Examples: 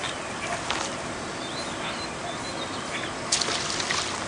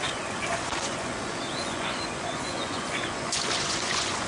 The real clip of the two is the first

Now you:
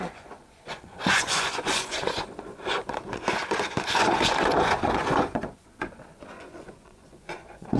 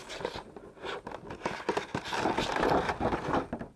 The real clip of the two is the second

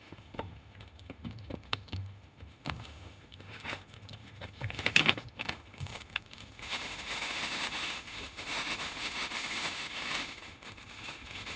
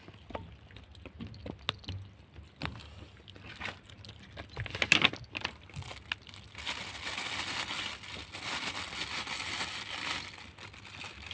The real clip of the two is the second